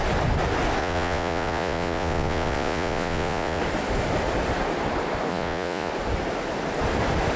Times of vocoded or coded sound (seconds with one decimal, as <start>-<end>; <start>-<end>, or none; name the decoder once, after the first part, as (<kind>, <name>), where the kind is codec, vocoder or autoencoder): 0.8-3.6 (vocoder, Vocos); 5.3-5.9